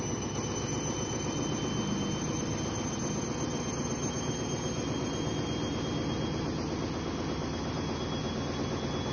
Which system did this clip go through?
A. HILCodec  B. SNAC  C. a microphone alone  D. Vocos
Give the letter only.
C